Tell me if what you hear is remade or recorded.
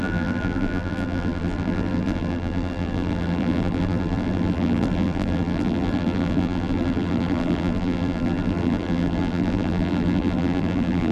remade